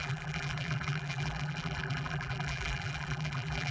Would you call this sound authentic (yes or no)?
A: no